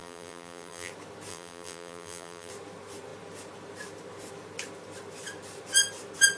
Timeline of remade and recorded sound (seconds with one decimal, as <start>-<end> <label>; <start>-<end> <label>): 0.0-0.9 remade; 0.9-1.3 recorded; 1.3-2.5 remade; 2.5-6.4 recorded